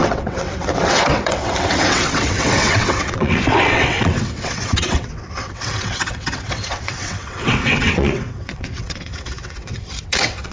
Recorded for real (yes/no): no